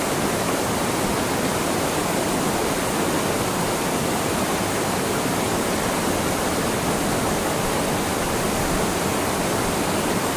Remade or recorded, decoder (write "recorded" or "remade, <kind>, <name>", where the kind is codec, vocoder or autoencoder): recorded